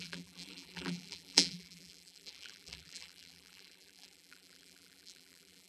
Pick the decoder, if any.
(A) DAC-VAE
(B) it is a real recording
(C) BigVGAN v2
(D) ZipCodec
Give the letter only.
C